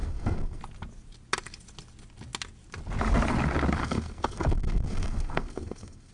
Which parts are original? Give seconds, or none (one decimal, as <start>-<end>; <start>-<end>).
0.6-3.8